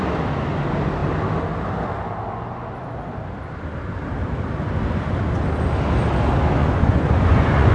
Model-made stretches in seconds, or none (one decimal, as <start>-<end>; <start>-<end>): 6.6-7.7